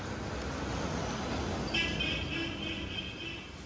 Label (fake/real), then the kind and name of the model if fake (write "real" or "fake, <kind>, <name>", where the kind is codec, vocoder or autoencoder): real